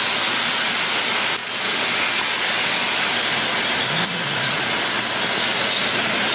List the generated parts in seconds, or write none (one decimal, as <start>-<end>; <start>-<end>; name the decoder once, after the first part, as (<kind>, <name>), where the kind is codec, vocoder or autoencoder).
none